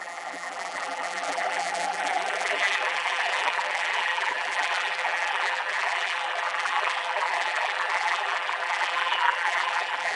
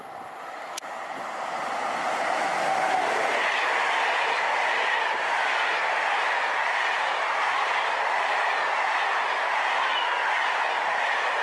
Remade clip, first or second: first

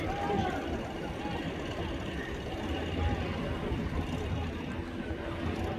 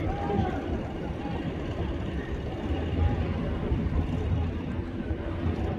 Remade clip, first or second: second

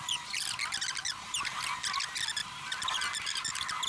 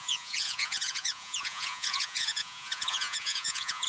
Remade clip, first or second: second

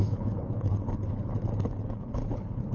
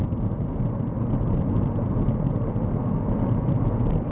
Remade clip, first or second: first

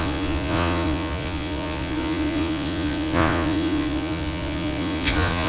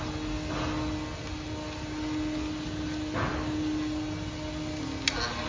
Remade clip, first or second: first